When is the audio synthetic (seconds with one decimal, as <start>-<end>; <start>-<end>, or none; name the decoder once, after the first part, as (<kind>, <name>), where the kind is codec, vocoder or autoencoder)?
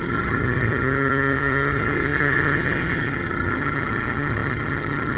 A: 0.0-5.2 (vocoder, HiFi-GAN)